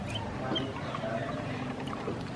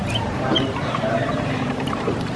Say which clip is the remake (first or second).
second